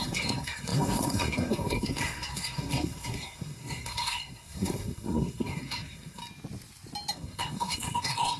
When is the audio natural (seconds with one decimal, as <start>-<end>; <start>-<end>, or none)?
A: 6.2-7.1